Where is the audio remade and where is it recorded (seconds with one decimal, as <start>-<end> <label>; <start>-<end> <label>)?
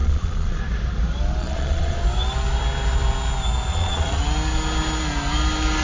0.0-0.6 remade; 0.6-1.4 recorded; 1.4-2.0 remade; 2.0-3.7 recorded; 3.7-4.2 remade; 4.2-5.8 recorded